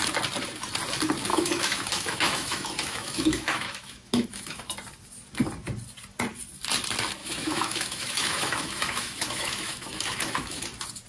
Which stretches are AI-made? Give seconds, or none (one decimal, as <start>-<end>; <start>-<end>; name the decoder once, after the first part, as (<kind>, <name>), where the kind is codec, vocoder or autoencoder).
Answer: 1.3-4.6 (autoencoder, DAC-VAE); 7.2-10.6